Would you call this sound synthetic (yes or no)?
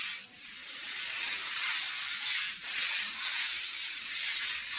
no